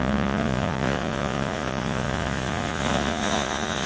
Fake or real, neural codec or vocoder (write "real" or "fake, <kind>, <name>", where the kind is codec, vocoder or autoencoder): fake, vocoder, Vocos